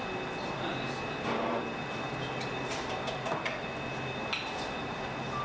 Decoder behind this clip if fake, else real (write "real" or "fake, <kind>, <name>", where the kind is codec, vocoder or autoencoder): real